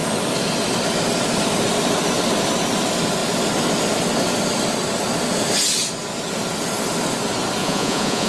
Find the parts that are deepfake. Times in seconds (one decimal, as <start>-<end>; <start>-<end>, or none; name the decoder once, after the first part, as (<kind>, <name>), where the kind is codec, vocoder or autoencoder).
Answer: 7.6-8.3 (vocoder, Vocos)